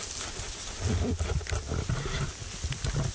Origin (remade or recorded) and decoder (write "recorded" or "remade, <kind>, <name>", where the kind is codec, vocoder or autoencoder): recorded